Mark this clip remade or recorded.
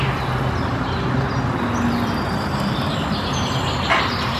recorded